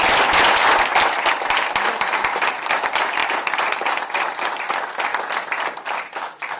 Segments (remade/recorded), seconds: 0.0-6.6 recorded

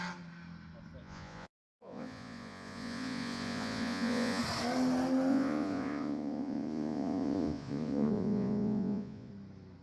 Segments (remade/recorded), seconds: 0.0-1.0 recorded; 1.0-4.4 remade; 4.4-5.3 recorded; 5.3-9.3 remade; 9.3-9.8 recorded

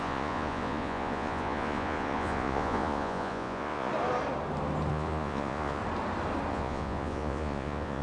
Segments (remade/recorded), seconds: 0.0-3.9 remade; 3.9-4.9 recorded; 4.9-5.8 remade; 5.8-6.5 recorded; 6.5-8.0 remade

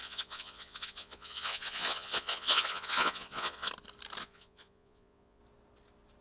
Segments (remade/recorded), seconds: 0.0-3.7 remade; 3.7-4.2 recorded; 4.2-5.4 remade; 5.4-6.2 recorded

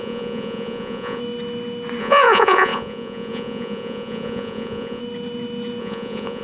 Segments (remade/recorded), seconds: 0.0-1.2 remade; 1.2-2.0 recorded; 2.0-5.0 remade; 5.0-5.8 recorded; 5.8-6.4 remade

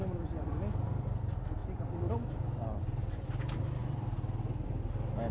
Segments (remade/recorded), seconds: 0.0-5.3 recorded

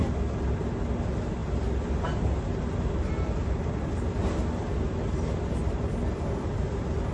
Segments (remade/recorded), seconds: 0.0-7.1 recorded